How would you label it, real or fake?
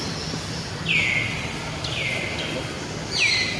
real